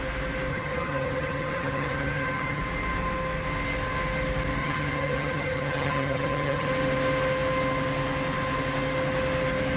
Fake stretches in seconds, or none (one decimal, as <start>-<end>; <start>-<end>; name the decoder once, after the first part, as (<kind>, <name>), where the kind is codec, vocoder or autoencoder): 0.5-2.6 (vocoder, HiFi-GAN); 4.6-6.7